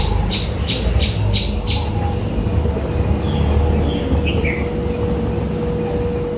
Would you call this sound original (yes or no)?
yes